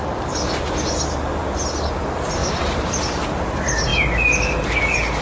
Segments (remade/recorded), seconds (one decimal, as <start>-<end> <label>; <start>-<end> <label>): 0.0-2.4 recorded; 2.4-2.9 remade; 2.9-5.2 recorded